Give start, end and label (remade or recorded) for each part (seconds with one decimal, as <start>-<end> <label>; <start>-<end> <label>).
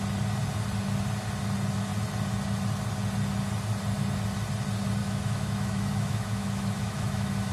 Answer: 0.0-5.0 recorded; 5.0-7.5 remade